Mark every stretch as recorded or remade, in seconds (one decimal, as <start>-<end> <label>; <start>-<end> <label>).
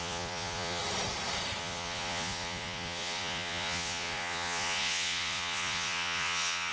0.0-0.8 remade; 0.8-1.6 recorded; 1.6-6.7 remade